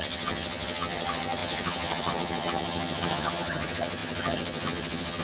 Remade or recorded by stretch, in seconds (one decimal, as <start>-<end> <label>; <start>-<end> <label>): 0.0-5.2 remade